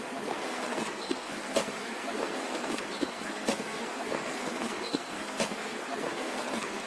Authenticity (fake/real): fake